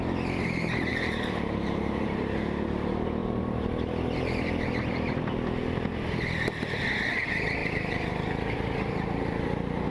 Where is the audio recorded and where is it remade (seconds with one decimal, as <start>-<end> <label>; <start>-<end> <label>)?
0.0-0.9 recorded; 0.9-2.4 remade; 2.4-3.2 recorded; 3.2-3.7 remade; 3.7-7.6 recorded; 7.6-9.4 remade; 9.4-9.9 recorded